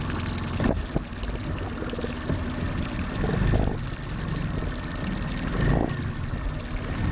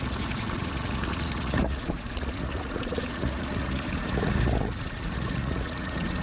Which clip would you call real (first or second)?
first